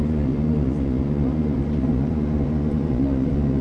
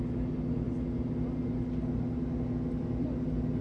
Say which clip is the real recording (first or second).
second